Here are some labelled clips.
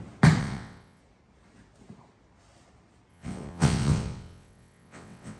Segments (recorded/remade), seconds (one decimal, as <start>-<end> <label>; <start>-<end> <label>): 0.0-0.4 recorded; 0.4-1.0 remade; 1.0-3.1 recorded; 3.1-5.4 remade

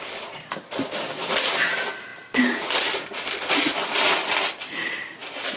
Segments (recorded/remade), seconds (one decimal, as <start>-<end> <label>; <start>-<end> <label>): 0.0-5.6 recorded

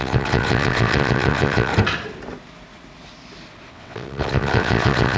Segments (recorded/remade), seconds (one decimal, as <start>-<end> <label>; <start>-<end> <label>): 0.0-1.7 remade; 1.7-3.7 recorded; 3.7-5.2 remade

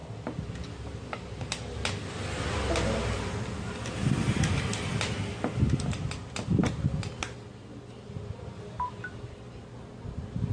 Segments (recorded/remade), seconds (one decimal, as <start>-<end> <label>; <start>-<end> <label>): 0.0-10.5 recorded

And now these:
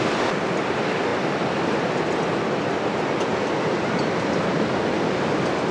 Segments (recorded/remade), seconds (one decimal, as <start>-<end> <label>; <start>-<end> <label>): 0.0-5.7 recorded